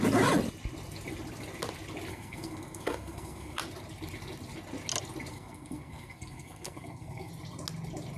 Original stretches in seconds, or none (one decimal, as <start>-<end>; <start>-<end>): 0.0-2.1; 3.6-5.3; 7.3-8.2